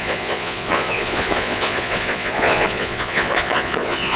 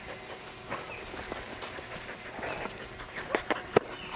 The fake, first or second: first